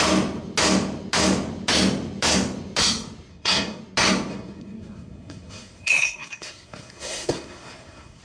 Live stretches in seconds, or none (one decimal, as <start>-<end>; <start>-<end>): 0.0-3.3; 3.8-4.3